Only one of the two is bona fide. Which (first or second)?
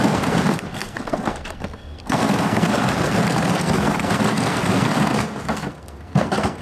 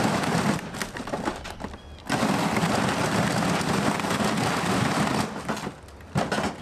second